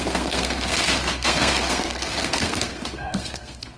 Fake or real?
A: fake